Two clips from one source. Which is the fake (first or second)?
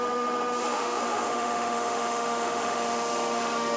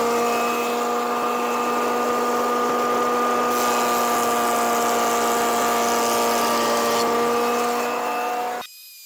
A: first